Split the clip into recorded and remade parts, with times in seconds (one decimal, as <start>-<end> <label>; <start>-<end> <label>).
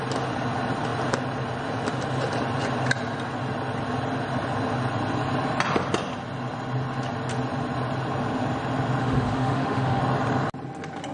0.0-9.0 recorded; 9.0-10.0 remade; 10.0-11.1 recorded